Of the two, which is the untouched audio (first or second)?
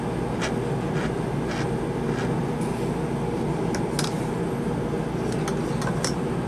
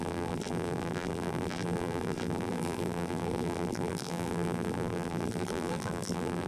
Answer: first